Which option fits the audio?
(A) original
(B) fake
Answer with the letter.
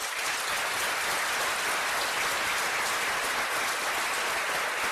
A